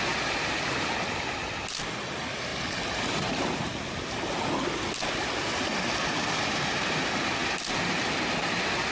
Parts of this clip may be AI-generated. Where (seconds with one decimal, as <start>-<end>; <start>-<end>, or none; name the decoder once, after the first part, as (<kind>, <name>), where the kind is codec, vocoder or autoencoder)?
none